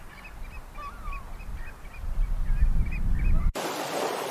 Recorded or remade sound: recorded